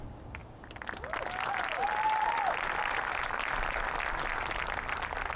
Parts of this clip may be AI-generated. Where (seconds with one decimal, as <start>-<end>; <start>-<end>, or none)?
none